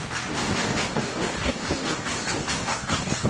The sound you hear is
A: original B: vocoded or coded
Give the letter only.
B